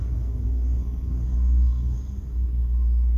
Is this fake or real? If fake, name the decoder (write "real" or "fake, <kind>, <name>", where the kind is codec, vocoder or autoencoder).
fake, codec, SNAC